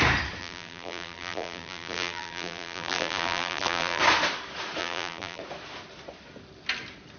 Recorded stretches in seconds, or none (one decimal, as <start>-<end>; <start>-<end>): 0.0-0.4; 4.0-4.8; 5.4-7.2